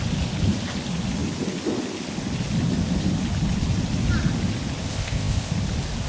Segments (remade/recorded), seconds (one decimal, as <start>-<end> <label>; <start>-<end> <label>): 0.0-4.9 recorded; 4.9-5.5 remade; 5.5-6.1 recorded